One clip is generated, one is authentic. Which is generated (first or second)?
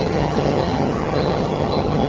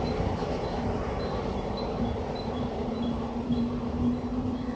first